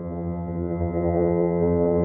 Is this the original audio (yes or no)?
no